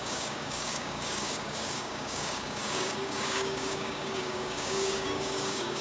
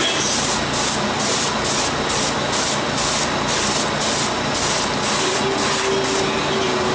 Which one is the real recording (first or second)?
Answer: second